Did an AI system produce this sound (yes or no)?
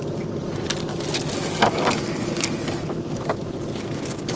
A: no